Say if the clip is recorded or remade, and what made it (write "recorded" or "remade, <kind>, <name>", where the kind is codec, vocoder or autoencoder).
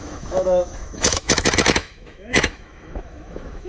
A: remade, autoencoder, DAC-VAE